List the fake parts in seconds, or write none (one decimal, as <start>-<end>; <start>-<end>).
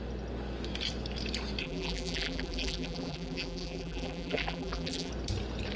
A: 1.6-5.1